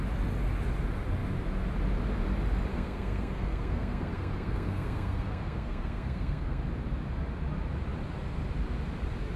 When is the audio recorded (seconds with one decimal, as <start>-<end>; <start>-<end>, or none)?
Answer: 0.0-2.7; 6.6-9.4